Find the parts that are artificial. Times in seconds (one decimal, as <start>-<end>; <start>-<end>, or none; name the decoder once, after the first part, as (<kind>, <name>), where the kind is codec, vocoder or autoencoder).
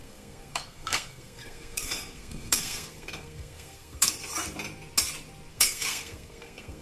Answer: 0.0-4.1 (codec, SNAC); 5.5-6.8